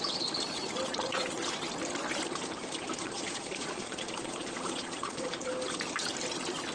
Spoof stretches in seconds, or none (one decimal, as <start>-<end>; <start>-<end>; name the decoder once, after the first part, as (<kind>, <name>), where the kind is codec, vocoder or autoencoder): 0.9-1.4 (vocoder, Vocos); 3.0-5.5